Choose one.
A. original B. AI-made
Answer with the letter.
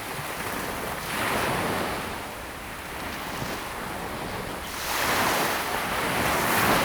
A